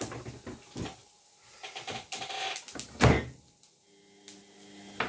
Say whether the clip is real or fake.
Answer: real